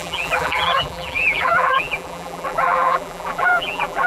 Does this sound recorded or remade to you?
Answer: remade